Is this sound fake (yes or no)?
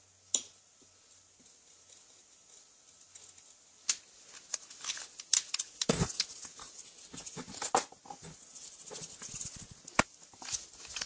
no